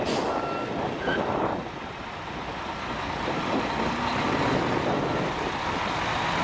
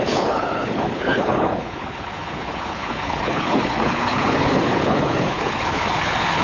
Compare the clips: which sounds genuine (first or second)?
first